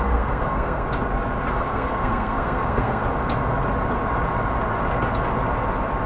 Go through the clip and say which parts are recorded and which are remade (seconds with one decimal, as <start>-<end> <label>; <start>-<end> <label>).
0.0-0.9 remade; 0.9-1.5 recorded; 1.5-3.0 remade; 3.0-6.1 recorded